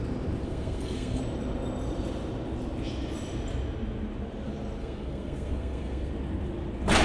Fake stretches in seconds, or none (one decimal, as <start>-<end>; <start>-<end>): 0.4-1.2; 4.8-6.1